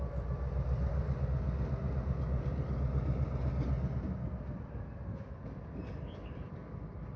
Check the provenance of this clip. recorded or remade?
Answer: recorded